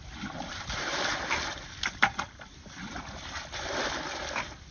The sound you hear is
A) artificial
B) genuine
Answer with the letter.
A